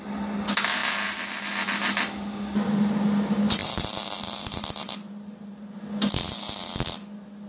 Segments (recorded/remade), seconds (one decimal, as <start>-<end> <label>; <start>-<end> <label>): 0.0-3.6 recorded; 3.6-5.5 remade; 5.5-7.5 recorded